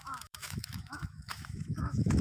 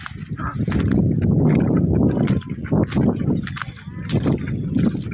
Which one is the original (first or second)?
second